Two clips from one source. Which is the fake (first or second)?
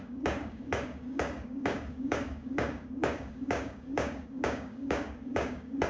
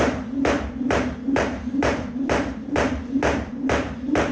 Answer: first